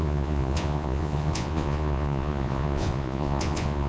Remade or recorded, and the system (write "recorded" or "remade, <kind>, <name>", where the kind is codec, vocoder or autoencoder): remade, vocoder, Vocos